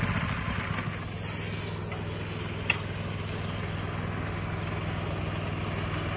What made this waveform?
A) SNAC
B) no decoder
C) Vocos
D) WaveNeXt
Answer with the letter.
B